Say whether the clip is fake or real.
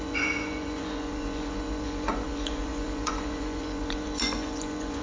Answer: fake